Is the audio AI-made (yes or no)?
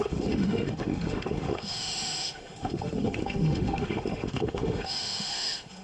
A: yes